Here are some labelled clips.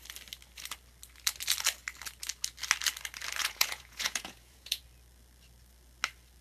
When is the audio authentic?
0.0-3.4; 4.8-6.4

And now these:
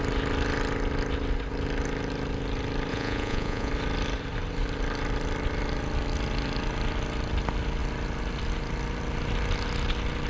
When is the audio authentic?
0.0-2.9; 3.7-10.3

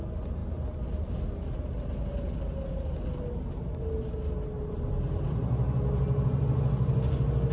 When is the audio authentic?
0.0-7.5

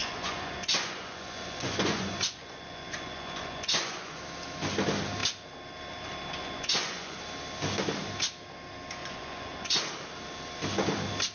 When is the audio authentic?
4.2-6.4; 7.2-9.0; 9.9-11.3

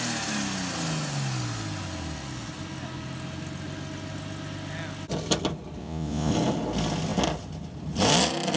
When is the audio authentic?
0.0-5.8; 6.3-8.6